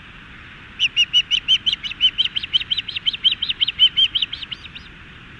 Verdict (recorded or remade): recorded